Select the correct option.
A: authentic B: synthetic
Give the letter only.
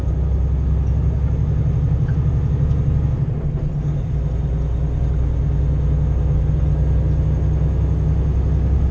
A